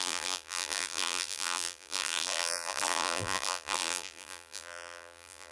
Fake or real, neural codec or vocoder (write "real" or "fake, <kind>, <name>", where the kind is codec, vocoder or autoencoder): fake, vocoder, BigVGAN v2